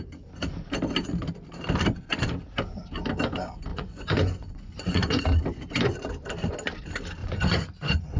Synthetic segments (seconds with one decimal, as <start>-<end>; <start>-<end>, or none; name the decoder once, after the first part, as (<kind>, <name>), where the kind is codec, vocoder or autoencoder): 3.7-5.2 (vocoder, Vocos); 7.2-8.2